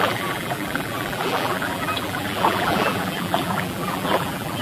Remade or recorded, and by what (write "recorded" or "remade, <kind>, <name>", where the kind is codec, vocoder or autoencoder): remade, vocoder, BigVGAN v2